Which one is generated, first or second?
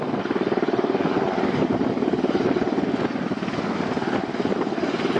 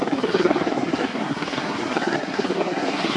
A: second